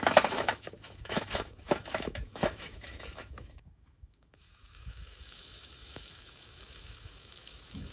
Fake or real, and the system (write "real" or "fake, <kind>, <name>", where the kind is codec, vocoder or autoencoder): fake, autoencoder, DAC-VAE